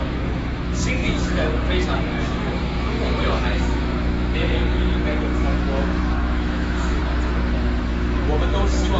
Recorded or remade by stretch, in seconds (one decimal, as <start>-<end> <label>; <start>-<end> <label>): 0.0-7.0 remade; 7.0-7.8 recorded; 7.8-9.0 remade